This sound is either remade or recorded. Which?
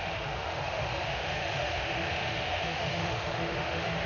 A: remade